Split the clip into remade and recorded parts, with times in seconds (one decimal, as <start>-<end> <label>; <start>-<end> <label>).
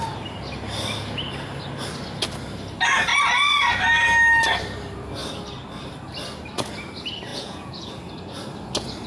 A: 0.0-7.3 recorded; 7.3-7.9 remade; 7.9-9.1 recorded